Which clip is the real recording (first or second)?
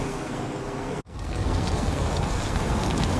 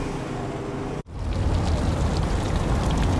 second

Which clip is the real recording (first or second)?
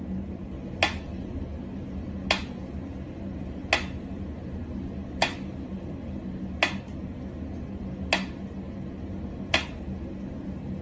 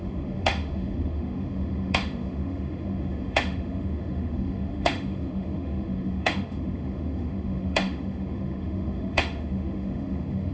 first